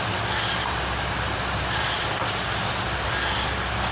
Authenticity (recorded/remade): recorded